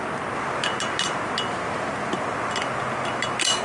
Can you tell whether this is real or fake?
real